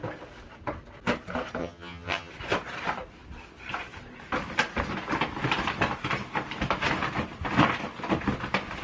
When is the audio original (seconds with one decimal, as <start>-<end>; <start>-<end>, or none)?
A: 0.0-1.6; 2.3-8.8

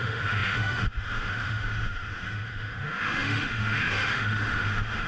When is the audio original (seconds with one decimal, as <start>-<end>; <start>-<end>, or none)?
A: none

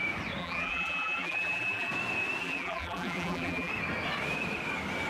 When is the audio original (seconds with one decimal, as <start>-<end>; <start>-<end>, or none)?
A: 0.0-0.4; 1.9-2.4; 3.7-5.1

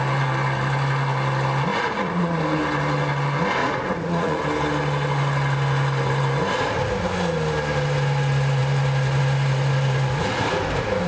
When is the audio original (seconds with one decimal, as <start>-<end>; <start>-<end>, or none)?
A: 0.0-1.7; 2.4-3.6; 4.4-11.1

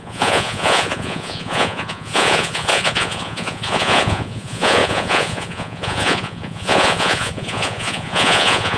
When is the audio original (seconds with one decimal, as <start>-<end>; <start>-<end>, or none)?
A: none

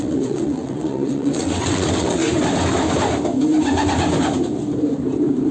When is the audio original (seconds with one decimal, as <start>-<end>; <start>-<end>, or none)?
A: 2.2-5.5

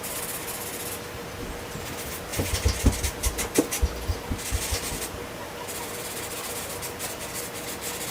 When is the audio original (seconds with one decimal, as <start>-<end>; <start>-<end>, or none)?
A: 0.0-8.1

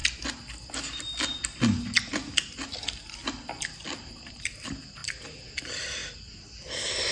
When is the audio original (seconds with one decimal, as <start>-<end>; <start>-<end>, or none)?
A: 0.0-7.1